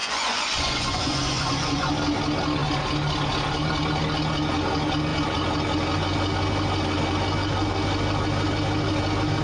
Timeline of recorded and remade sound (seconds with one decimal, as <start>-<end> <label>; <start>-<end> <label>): 0.0-1.9 remade; 1.9-9.4 recorded